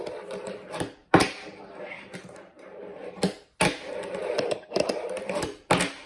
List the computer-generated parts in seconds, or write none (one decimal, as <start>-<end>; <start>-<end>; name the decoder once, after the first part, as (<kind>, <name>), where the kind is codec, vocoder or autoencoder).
1.0-2.8 (vocoder, BigVGAN v2); 4.2-6.1